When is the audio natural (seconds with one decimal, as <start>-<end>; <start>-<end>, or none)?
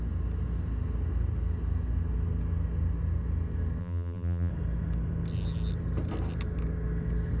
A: 0.0-3.8; 4.5-7.4